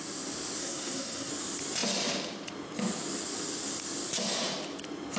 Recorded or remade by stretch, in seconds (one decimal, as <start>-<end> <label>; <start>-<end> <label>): 0.0-0.6 recorded; 0.6-1.3 remade; 1.3-5.2 recorded